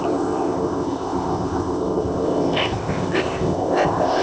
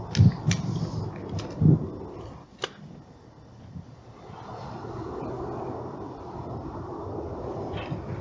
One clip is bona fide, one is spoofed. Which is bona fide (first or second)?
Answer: second